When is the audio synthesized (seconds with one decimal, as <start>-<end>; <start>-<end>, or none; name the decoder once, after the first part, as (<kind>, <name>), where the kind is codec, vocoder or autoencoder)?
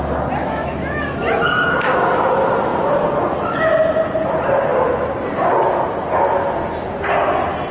0.4-2.2 (autoencoder, DAC-VAE)